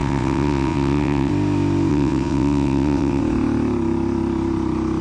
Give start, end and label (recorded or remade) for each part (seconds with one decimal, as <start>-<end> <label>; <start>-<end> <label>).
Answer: 0.0-1.3 remade; 1.3-1.9 recorded; 1.9-3.2 remade; 3.2-5.0 recorded